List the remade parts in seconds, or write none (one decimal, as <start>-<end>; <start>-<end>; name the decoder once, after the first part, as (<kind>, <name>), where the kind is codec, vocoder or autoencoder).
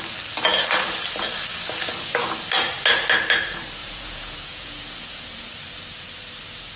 3.8-5.5 (vocoder, Vocos)